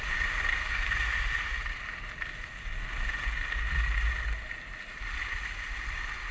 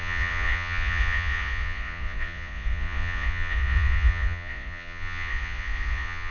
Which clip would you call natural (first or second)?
first